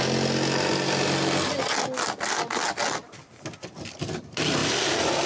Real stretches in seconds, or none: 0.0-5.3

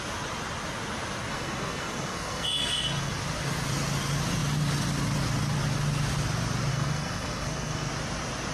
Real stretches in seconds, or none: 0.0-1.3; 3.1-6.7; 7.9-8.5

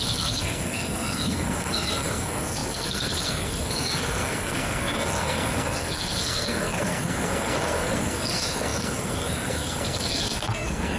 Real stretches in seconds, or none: none

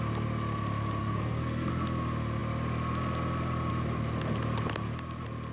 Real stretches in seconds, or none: 0.0-1.0; 1.7-5.5